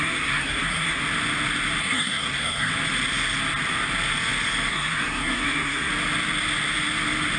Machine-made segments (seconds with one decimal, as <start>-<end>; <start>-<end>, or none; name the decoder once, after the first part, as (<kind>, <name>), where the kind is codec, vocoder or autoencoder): 0.0-1.0 (codec, SNAC); 1.8-2.7; 4.7-5.9